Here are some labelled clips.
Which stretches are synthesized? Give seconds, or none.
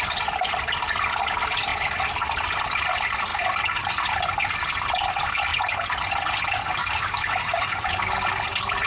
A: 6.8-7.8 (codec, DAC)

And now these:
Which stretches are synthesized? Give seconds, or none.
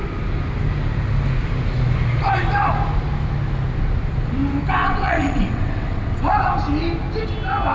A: 4.8-6.3 (vocoder, WaveNeXt)